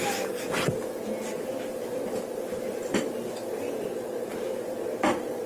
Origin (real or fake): real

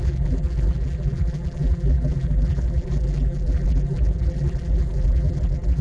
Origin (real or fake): fake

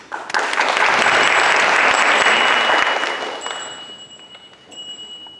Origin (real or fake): real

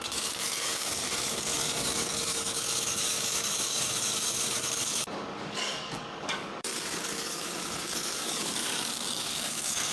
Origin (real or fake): fake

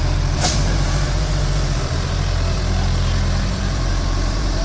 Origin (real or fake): fake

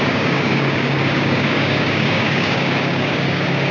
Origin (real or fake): fake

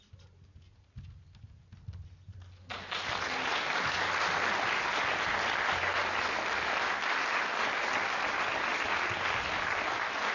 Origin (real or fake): real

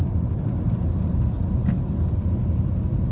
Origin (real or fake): real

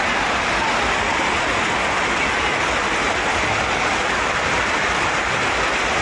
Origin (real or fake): real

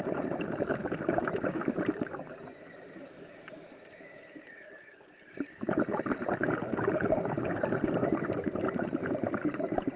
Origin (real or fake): fake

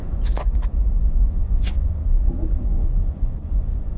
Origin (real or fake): fake